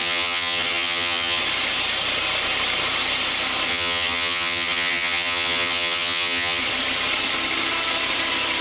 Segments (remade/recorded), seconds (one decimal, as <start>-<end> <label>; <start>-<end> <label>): 0.0-1.4 remade; 1.4-3.7 recorded; 3.7-6.6 remade; 6.6-8.6 recorded

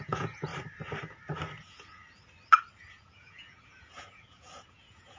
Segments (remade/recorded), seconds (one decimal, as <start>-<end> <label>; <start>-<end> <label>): 0.0-0.5 remade; 0.5-1.6 recorded; 1.6-2.0 remade; 2.0-2.7 recorded; 2.7-5.2 remade

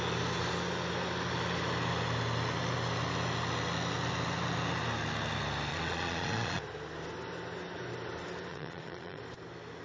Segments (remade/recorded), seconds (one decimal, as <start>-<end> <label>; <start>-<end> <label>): 0.0-5.7 recorded; 5.7-6.6 remade; 6.6-8.5 recorded; 8.5-9.2 remade; 9.2-9.8 recorded

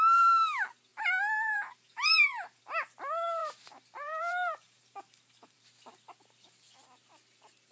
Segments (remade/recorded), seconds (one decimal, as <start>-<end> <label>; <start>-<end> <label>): 0.0-0.9 recorded; 0.9-2.6 remade; 2.6-3.4 recorded; 3.4-5.6 remade; 5.6-7.7 recorded